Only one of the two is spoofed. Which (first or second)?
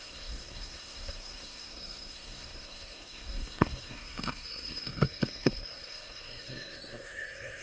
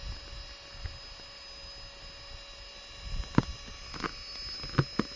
first